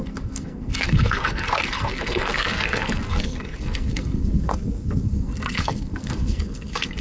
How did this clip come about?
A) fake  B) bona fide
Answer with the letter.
A